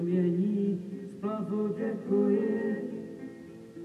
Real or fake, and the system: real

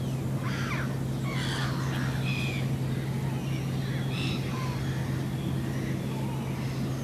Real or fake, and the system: real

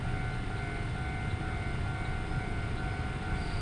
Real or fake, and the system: real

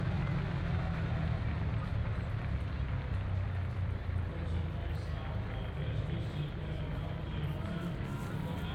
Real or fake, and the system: real